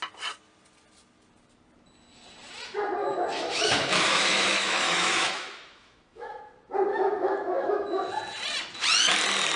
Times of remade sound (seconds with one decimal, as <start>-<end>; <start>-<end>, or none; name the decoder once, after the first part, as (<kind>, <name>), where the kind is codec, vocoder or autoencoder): 3.0-6.4 (autoencoder, DAC-VAE); 6.9-8.1